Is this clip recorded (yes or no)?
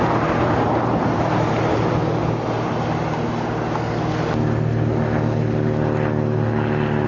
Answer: yes